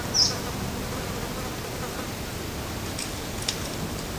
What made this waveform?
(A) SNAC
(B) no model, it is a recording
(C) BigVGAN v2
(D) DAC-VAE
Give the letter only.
B